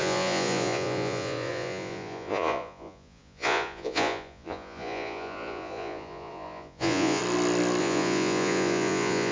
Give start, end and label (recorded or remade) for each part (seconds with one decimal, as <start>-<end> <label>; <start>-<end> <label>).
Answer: 0.0-7.2 remade; 7.2-7.8 recorded; 7.8-9.3 remade